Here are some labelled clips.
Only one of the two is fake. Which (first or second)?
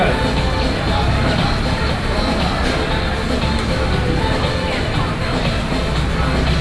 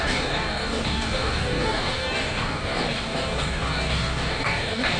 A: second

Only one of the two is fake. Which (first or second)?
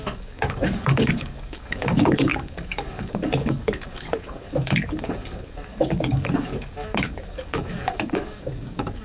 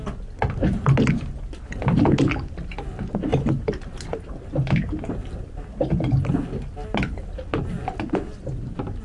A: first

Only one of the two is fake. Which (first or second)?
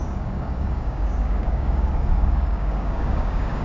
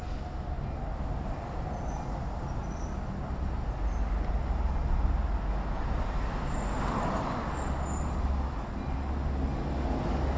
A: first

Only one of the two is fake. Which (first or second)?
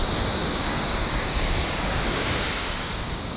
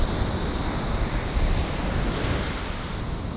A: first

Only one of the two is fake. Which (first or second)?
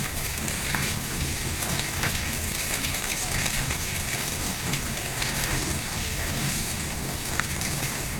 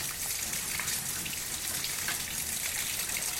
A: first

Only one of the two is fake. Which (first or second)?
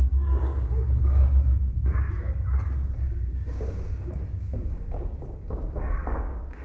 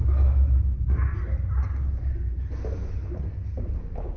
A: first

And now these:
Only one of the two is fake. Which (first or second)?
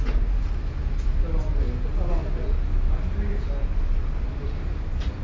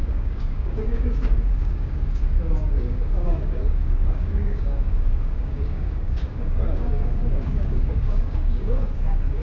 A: second